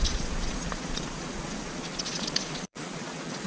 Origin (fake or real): fake